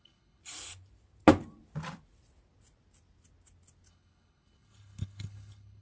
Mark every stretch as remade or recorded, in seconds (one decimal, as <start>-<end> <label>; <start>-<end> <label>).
0.0-0.4 remade; 0.4-3.9 recorded; 3.9-5.8 remade